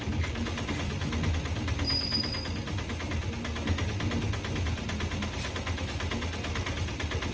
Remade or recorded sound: recorded